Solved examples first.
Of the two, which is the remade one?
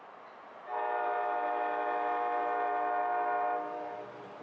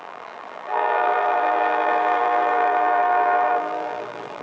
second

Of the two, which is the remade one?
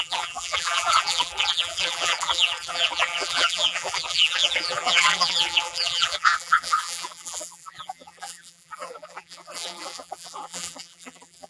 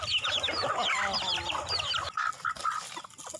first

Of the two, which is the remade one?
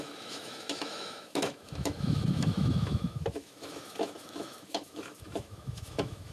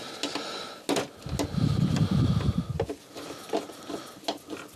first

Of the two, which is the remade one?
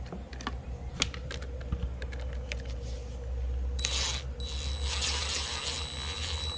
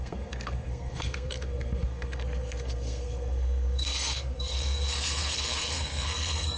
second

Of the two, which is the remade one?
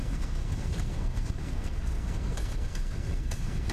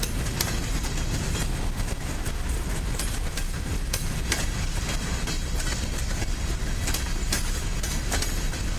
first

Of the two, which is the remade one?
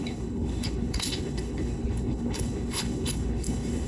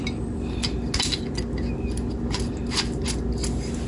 first